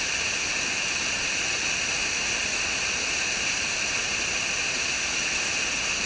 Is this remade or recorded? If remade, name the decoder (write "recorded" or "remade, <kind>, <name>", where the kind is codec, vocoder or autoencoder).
recorded